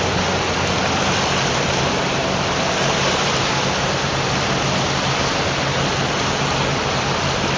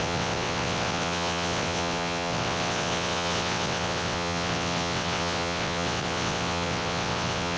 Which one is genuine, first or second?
first